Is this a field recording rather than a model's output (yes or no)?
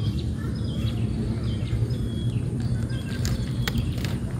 no